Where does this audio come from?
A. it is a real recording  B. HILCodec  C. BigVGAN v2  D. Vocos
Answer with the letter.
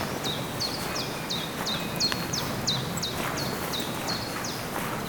A